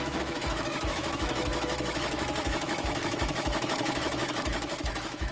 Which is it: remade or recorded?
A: remade